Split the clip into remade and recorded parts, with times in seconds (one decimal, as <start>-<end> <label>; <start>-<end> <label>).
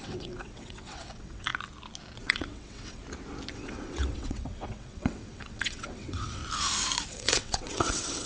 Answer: 0.0-1.5 remade; 1.5-2.2 recorded; 2.2-3.0 remade; 3.0-3.5 recorded; 3.5-6.4 remade; 6.4-7.1 recorded; 7.1-8.3 remade